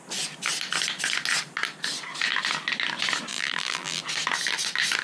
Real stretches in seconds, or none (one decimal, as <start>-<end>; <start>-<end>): 0.0-3.3; 4.0-5.0